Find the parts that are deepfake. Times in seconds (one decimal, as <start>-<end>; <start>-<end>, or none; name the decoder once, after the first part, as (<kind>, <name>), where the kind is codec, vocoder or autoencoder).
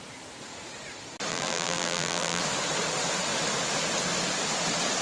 1.3-2.4 (vocoder, BigVGAN v2)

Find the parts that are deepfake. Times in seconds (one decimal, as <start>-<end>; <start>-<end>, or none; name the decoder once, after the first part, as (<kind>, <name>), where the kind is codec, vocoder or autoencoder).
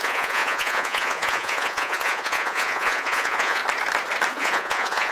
0.0-3.6 (vocoder, Vocos); 4.3-5.1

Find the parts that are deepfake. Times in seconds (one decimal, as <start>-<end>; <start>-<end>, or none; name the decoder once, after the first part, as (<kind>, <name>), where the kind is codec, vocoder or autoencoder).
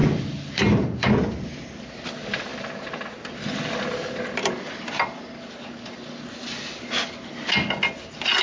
0.0-1.1 (vocoder, BigVGAN v2); 2.5-3.1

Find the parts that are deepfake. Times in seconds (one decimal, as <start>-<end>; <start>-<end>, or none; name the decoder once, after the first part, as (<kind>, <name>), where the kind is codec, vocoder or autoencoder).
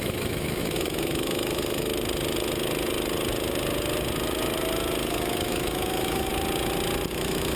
0.0-1.9 (autoencoder, DAC-VAE); 5.1-6.3; 7.1-7.6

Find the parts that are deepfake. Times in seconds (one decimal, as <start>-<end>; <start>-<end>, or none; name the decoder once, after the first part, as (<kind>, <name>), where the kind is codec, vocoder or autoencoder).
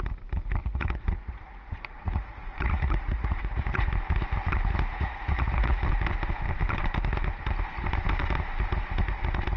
0.6-3.9 (vocoder, Vocos); 4.9-5.8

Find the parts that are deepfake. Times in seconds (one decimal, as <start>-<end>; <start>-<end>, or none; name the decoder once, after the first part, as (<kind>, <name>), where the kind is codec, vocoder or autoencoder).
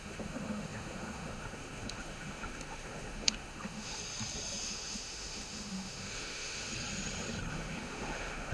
0.0-4.0 (autoencoder, DAC-VAE); 4.6-6.7; 7.5-8.5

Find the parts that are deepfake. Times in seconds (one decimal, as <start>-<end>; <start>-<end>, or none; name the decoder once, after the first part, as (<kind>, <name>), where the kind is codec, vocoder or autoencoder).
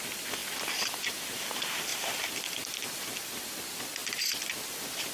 0.4-1.0 (vocoder, BigVGAN v2); 1.9-3.6; 4.0-5.1